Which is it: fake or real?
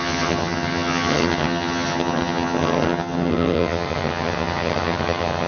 fake